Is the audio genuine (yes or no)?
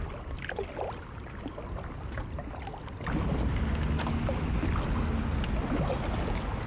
yes